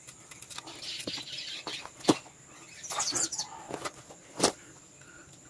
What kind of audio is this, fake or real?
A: real